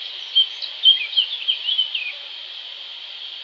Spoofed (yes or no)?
no